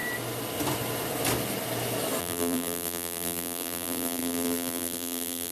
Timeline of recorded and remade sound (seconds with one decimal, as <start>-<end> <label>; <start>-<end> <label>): 0.0-2.2 recorded; 2.2-5.5 remade